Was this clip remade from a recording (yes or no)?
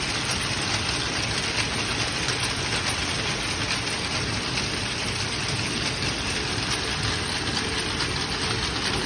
no